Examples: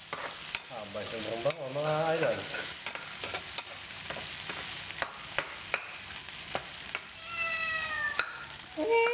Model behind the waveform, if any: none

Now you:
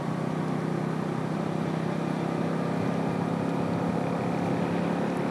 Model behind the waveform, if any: none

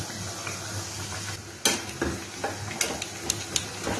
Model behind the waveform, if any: none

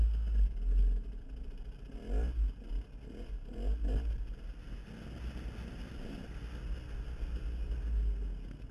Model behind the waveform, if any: none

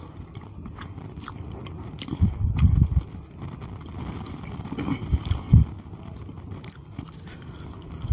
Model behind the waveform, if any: none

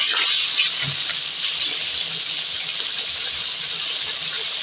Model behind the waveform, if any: none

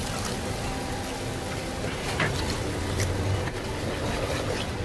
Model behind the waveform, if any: none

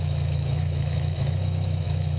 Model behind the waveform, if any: autoencoder, DAC-VAE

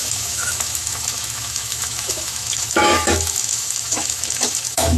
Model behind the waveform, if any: autoencoder, DAC-VAE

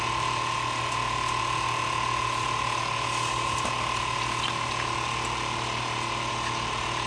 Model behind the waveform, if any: none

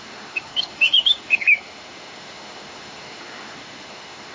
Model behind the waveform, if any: autoencoder, DAC-VAE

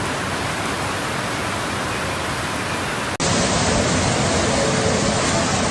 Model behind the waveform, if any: none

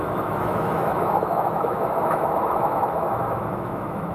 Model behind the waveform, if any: autoencoder, DAC-VAE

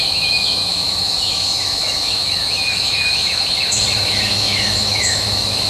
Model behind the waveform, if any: autoencoder, DAC-VAE